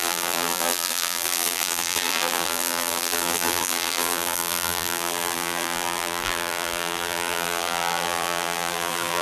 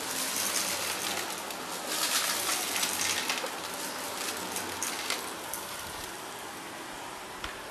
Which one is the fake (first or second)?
first